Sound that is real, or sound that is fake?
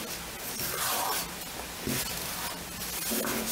real